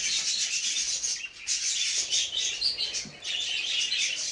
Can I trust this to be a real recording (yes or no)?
yes